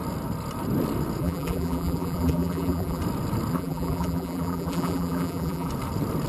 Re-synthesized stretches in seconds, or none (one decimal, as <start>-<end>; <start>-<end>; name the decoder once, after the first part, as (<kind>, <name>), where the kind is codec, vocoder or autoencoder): 1.2-3.0 (vocoder, BigVGAN v2); 3.5-5.7